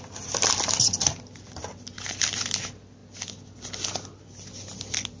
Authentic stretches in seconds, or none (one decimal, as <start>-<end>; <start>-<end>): 0.0-5.2